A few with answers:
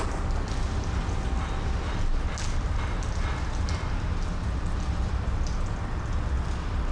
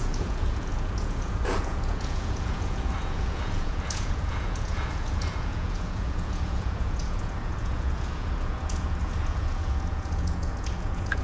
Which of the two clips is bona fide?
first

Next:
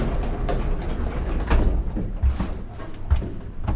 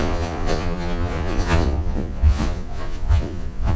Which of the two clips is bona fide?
first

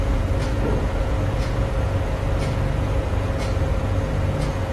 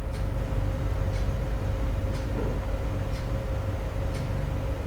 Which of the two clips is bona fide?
second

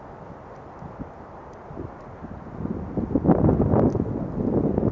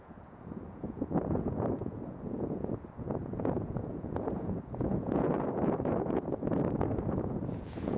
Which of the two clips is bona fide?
first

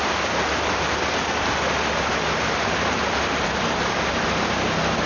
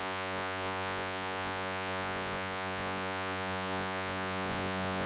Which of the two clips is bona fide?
first